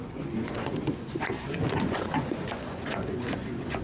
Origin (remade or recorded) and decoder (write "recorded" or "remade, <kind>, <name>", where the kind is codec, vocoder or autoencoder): remade, vocoder, Vocos